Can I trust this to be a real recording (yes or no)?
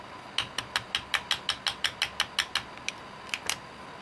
yes